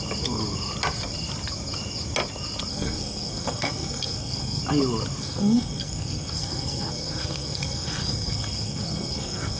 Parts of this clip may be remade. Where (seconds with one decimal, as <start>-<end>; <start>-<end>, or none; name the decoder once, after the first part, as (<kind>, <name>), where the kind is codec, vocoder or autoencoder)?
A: 2.7-4.6 (codec, SNAC); 5.2-9.6